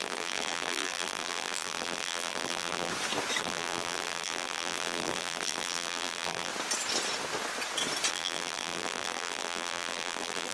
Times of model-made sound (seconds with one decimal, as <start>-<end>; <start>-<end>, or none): 0.0-2.9; 3.4-6.5; 8.1-10.5